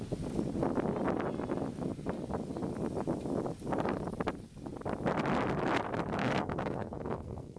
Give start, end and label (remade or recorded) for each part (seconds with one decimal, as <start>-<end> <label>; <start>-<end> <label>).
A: 0.0-6.2 recorded; 6.2-7.6 remade